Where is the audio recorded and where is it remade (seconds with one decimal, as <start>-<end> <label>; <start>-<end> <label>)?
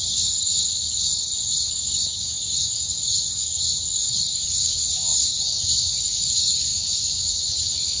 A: 0.0-8.0 remade